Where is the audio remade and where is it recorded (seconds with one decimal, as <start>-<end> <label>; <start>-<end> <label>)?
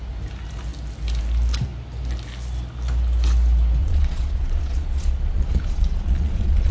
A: 0.0-3.8 recorded; 3.8-6.7 remade